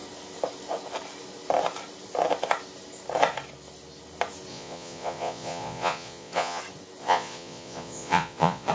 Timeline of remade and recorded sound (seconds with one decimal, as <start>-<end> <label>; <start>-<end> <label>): 0.0-4.5 recorded; 4.5-6.6 remade; 6.6-7.0 recorded; 7.0-8.7 remade